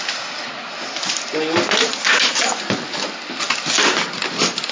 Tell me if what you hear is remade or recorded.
recorded